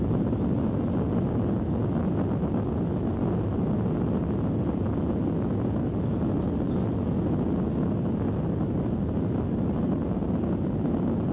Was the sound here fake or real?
real